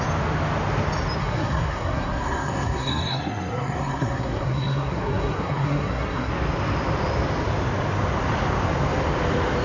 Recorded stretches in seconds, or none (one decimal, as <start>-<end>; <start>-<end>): 0.0-1.2; 6.3-9.6